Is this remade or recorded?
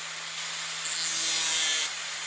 recorded